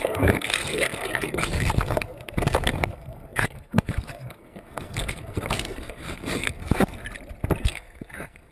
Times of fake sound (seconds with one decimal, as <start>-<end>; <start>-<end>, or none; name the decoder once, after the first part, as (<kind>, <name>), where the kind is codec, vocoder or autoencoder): 0.0-7.0 (codec, SNAC); 7.6-8.5